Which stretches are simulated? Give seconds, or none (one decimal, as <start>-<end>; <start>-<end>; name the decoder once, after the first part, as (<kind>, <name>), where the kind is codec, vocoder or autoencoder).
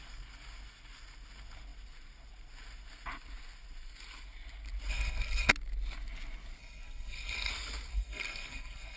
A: 4.9-5.5 (codec, SNAC); 6.6-7.5; 7.9-9.0